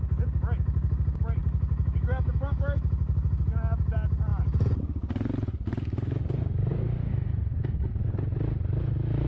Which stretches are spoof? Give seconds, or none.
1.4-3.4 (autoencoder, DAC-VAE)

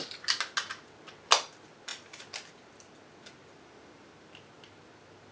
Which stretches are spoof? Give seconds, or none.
none

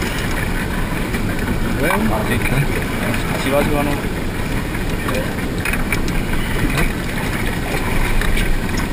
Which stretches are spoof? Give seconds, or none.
none

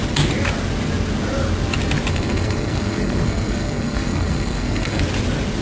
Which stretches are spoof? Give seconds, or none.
2.1-5.0 (codec, SNAC)

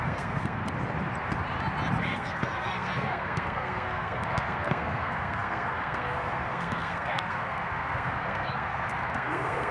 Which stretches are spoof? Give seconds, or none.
0.0-0.6 (codec, SNAC); 2.0-9.7

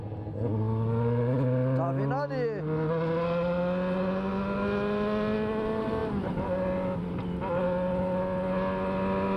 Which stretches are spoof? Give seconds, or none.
none

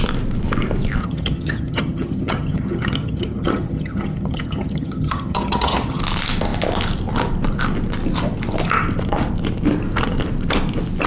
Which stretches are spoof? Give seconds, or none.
1.0-6.0 (vocoder, HiFi-GAN)